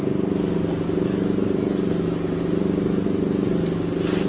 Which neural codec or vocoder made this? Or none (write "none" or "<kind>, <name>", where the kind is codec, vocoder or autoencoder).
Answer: none